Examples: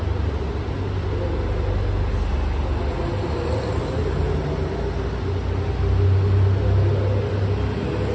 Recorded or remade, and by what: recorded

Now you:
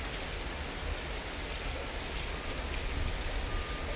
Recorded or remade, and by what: recorded